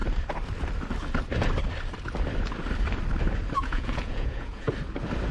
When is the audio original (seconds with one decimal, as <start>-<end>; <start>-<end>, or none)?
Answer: 0.0-3.6; 4.7-5.3